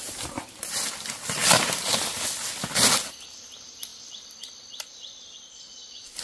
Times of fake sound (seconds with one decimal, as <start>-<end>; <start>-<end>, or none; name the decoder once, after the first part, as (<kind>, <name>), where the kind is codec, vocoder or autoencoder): 1.4-1.9 (vocoder, BigVGAN v2)

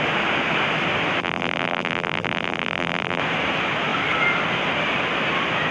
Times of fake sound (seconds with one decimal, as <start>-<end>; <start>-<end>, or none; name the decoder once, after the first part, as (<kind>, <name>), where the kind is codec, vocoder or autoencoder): 1.2-3.2 (vocoder, BigVGAN v2)

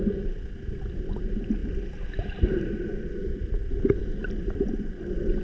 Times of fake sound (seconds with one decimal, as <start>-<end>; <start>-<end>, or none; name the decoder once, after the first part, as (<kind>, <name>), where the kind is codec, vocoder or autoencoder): none

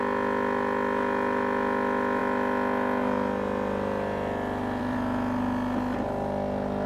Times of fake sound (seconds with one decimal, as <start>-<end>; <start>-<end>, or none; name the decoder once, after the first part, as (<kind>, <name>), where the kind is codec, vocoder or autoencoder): none

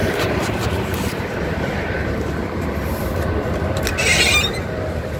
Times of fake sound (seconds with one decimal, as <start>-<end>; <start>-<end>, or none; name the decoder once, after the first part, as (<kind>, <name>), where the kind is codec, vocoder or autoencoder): 0.0-2.3 (vocoder, BigVGAN v2)

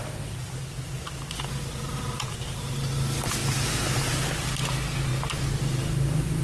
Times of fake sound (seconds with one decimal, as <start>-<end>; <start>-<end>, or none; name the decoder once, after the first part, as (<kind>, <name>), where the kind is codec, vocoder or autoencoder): none

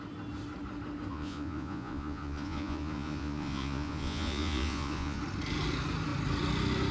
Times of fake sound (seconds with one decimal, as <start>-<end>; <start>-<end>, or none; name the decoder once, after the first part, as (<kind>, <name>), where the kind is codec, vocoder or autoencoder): 1.1-5.2 (vocoder, Vocos)